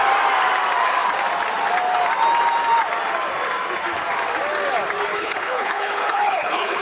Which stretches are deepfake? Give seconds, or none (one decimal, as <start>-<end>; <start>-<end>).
5.1-6.8